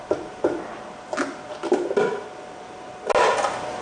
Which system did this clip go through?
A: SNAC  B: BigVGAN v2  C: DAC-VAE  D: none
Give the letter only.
D